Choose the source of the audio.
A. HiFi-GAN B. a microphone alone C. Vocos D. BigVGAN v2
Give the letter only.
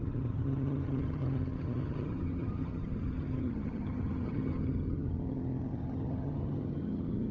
A